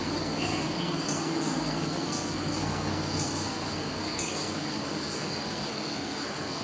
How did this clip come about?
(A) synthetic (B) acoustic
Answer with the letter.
A